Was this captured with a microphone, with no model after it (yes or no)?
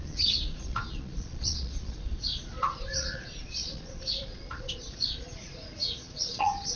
no